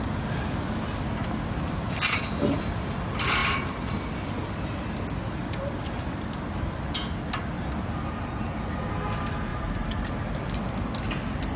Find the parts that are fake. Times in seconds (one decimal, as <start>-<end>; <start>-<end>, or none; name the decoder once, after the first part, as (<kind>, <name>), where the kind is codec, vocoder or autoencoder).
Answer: 9.5-10.1 (vocoder, BigVGAN v2)